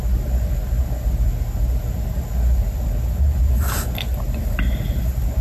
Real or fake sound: real